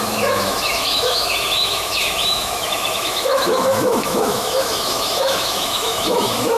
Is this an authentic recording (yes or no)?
no